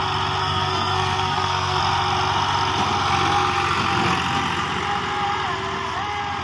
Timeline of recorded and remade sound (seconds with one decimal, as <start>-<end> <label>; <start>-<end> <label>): 0.0-0.4 recorded; 0.4-1.8 remade; 1.8-6.4 recorded